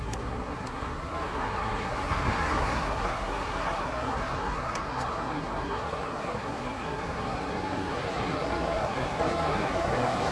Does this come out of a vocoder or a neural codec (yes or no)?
yes